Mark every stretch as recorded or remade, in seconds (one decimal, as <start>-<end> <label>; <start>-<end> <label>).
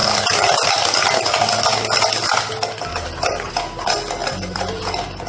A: 0.0-0.7 remade; 0.7-2.9 recorded; 2.9-3.5 remade; 3.5-4.2 recorded; 4.2-4.8 remade; 4.8-5.3 recorded